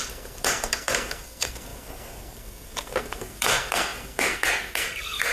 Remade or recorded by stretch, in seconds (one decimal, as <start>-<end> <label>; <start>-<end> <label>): 0.0-5.3 remade